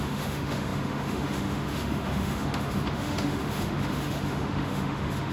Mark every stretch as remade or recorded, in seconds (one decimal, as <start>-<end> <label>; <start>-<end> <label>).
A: 0.0-5.3 remade